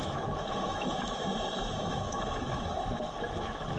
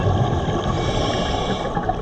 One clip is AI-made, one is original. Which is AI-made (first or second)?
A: first